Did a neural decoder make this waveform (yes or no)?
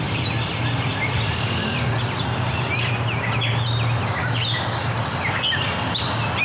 no